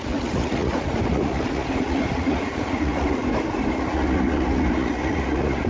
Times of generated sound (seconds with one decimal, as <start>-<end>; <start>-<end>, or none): 0.0-3.2; 3.7-5.7

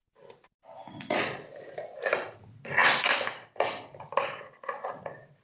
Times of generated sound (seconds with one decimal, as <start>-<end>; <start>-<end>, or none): none

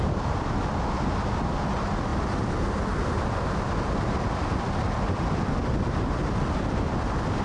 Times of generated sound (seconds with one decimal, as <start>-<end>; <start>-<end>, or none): 0.0-0.6; 1.6-2.1; 6.5-7.4

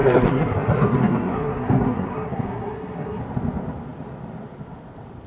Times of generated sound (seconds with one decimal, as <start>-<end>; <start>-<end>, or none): 0.0-3.2

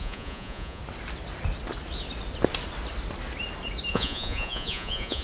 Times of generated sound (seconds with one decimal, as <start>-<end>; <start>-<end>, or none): 0.0-0.8; 3.9-5.2

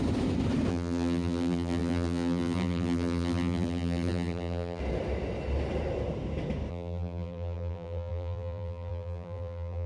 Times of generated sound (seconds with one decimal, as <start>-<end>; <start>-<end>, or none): 0.7-4.8; 6.7-9.9